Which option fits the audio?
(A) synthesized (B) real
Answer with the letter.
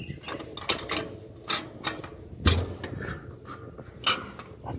B